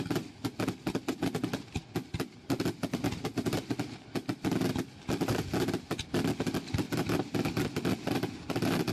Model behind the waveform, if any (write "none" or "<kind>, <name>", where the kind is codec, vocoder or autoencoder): none